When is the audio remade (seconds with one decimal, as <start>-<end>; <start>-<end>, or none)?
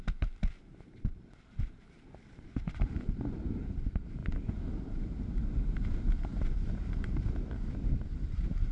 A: 0.0-4.2; 4.8-6.3; 7.0-8.7